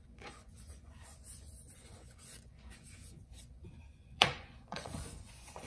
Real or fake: fake